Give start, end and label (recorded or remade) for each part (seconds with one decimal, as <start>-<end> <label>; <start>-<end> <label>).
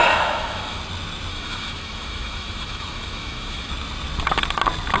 0.0-0.8 remade; 0.8-1.3 recorded; 1.3-3.7 remade; 3.7-5.0 recorded